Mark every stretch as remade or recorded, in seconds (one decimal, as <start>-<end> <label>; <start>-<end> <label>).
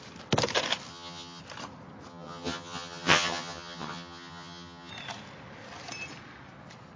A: 0.0-0.9 recorded; 0.9-1.4 remade; 1.4-2.1 recorded; 2.1-4.9 remade; 4.9-7.0 recorded